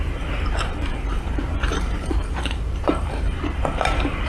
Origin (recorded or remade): remade